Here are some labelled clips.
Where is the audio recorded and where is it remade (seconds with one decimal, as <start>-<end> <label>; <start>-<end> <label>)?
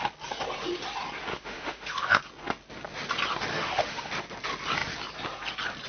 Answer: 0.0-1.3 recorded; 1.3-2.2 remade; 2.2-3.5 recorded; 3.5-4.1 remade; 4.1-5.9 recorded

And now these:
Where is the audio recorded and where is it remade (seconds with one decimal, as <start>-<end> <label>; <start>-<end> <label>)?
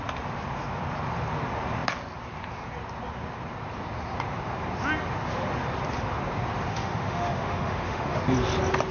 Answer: 0.0-6.7 recorded; 6.7-8.2 remade; 8.2-8.9 recorded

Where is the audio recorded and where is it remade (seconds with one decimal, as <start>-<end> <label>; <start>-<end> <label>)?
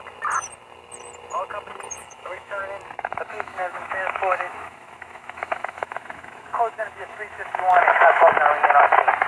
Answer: 0.0-2.0 recorded; 2.0-2.6 remade; 2.6-3.3 recorded; 3.3-8.3 remade; 8.3-9.3 recorded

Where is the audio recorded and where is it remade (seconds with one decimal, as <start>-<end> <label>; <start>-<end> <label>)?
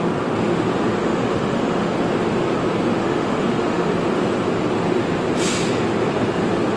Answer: 0.0-1.0 recorded; 1.0-1.9 remade; 1.9-3.0 recorded; 3.0-3.9 remade; 3.9-6.8 recorded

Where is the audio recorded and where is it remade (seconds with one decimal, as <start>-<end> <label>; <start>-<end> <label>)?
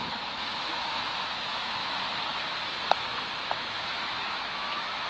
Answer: 0.0-1.8 remade; 1.8-3.4 recorded; 3.4-5.1 remade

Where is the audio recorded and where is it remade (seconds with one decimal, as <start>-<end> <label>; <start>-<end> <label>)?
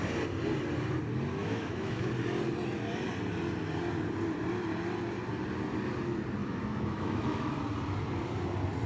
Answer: 0.0-1.4 recorded; 1.4-2.1 remade; 2.1-6.4 recorded; 6.4-7.6 remade; 7.6-8.9 recorded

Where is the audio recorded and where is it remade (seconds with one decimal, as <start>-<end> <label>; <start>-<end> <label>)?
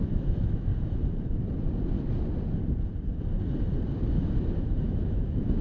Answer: 0.0-0.7 remade; 0.7-4.1 recorded; 4.1-5.6 remade